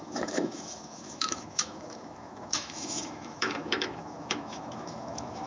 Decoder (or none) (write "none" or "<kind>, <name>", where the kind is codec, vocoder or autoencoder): autoencoder, DAC-VAE